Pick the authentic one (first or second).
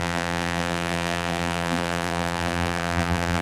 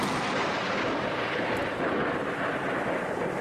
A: second